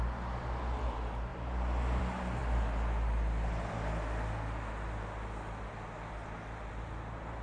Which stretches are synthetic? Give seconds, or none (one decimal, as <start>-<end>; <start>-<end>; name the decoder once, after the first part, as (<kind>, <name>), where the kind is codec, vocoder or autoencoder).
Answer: none